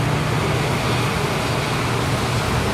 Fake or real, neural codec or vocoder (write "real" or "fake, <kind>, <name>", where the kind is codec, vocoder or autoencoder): real